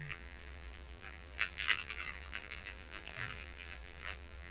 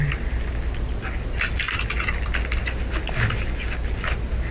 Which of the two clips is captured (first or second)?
second